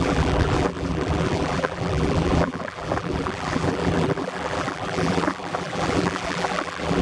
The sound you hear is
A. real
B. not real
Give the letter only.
B